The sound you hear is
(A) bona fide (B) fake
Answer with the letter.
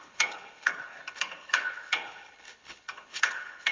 B